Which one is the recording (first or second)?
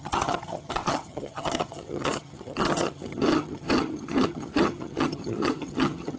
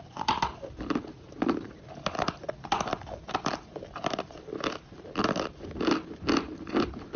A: second